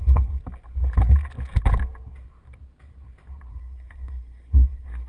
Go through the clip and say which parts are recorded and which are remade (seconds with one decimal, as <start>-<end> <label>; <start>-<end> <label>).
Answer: 0.0-0.4 remade; 0.4-3.5 recorded; 3.5-5.1 remade